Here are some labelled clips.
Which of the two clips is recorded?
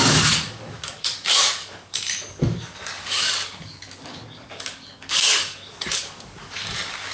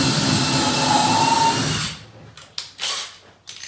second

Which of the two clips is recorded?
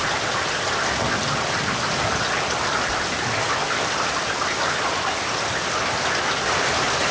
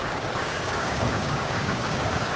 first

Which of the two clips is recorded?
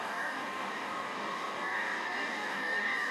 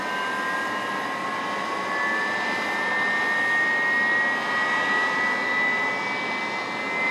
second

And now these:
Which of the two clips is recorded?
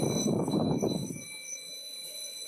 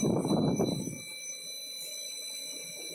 second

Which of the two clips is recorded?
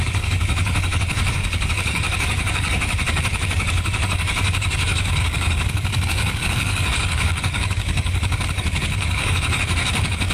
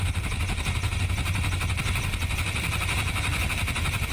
second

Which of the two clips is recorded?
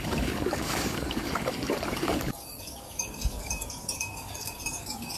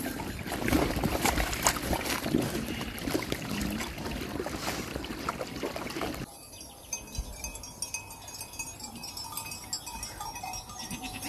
second